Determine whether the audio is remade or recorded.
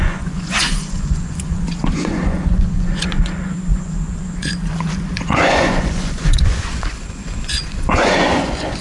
remade